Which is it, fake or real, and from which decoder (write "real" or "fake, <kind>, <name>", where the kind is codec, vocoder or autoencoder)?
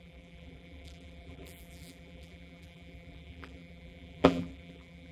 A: fake, vocoder, BigVGAN v2